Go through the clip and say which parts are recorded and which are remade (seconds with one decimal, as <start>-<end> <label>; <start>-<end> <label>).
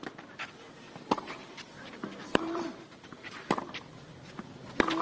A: 0.0-1.4 recorded; 1.4-3.6 remade; 3.6-5.0 recorded